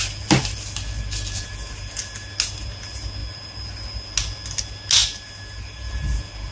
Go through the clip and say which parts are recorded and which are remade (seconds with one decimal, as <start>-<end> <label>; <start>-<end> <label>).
0.0-6.5 recorded